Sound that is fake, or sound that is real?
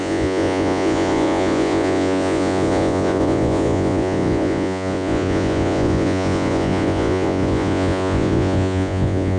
fake